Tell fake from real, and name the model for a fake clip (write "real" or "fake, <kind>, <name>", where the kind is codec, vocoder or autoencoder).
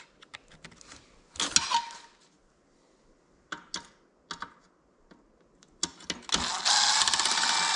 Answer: real